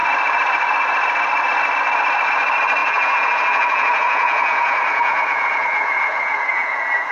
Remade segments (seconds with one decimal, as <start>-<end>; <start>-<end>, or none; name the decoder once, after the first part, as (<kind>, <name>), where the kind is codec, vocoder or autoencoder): 2.8-7.1 (vocoder, Vocos)